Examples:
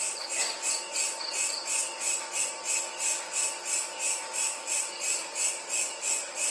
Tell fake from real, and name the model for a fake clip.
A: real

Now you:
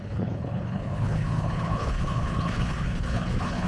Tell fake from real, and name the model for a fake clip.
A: fake, codec, HILCodec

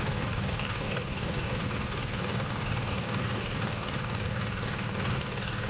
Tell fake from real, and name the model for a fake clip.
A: fake, codec, DAC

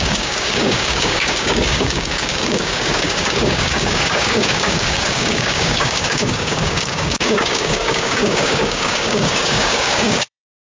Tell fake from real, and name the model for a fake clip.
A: fake, codec, DAC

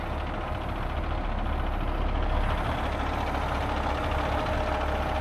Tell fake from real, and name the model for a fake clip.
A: real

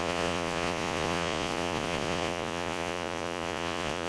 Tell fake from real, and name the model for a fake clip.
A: fake, vocoder, Vocos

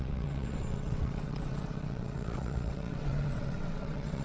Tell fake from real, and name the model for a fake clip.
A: fake, vocoder, WaveNeXt